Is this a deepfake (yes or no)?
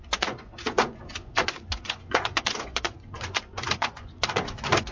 yes